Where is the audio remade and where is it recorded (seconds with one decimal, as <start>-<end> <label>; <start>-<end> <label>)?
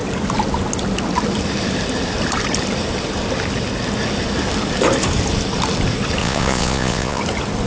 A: 0.0-6.2 recorded; 6.2-7.2 remade; 7.2-7.7 recorded